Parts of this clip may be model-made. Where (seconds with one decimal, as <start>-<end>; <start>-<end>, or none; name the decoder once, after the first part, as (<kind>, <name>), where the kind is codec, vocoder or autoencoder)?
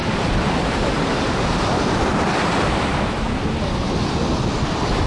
none